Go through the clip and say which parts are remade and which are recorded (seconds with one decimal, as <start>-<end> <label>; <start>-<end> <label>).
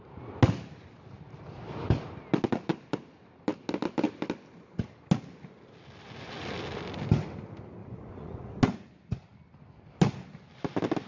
0.0-7.8 recorded; 7.8-8.4 remade; 8.4-11.1 recorded